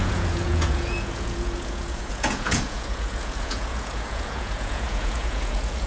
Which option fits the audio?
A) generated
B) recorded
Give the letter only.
A